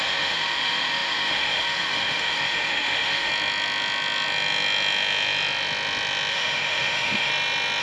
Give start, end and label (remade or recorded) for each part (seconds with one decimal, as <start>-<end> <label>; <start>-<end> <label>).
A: 0.0-3.3 remade; 3.3-6.3 recorded; 6.3-7.3 remade; 7.3-7.8 recorded